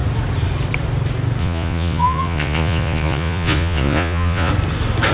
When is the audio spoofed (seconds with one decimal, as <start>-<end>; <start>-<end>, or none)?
1.4-4.5